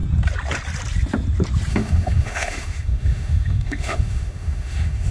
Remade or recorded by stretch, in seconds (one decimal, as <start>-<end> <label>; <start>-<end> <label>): 0.0-1.7 recorded; 1.7-5.1 remade